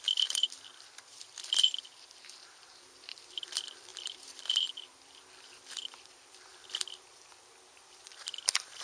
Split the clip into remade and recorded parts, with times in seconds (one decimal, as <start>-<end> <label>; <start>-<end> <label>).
0.0-0.7 remade; 0.7-2.8 recorded; 2.8-6.5 remade; 6.5-7.7 recorded; 7.7-8.8 remade